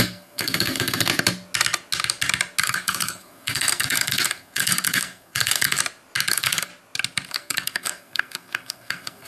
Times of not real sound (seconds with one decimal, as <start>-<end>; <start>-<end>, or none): 0.0-1.1; 2.6-5.8; 6.3-6.7; 7.3-9.3